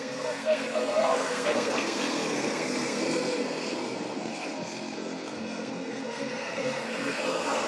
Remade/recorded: remade